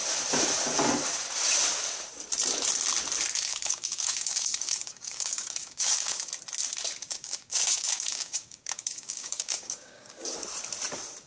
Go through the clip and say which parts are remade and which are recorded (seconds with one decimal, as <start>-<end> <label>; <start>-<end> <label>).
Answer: 0.0-3.5 recorded; 3.5-6.3 remade; 6.3-7.0 recorded; 7.0-10.1 remade; 10.1-11.3 recorded